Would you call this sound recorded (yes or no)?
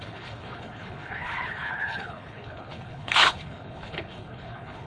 no